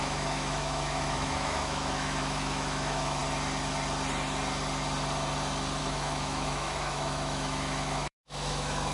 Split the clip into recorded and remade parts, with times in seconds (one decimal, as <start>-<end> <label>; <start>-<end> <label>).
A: 0.0-3.2 remade; 3.2-5.8 recorded; 5.8-8.9 remade